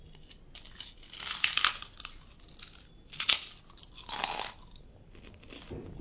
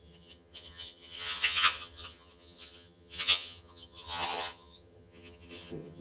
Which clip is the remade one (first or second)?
second